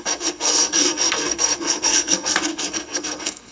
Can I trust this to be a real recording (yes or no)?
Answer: no